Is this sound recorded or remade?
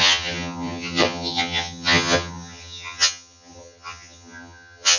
remade